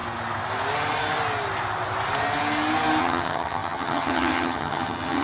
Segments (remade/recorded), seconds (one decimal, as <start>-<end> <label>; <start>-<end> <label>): 0.0-3.0 recorded; 3.0-5.2 remade